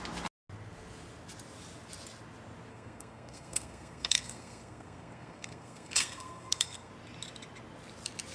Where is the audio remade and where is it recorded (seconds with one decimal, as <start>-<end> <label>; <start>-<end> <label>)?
0.0-2.7 recorded; 2.7-6.9 remade; 6.9-8.3 recorded

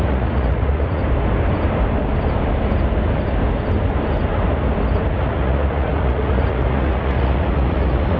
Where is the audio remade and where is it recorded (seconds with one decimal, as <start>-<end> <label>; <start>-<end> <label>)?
0.0-1.0 remade; 1.0-5.1 recorded; 5.1-8.2 remade